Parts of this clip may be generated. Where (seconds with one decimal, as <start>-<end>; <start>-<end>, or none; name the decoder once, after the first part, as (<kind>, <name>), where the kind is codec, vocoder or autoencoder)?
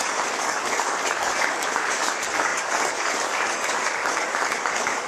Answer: 0.0-5.1 (codec, DAC)